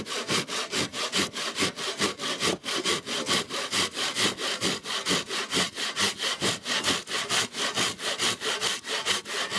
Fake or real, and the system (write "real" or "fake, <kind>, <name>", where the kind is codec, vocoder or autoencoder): real